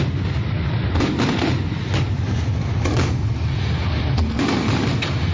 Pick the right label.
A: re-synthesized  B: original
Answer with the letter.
B